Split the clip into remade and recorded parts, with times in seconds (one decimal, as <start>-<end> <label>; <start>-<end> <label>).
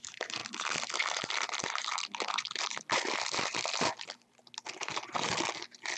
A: 0.0-6.0 recorded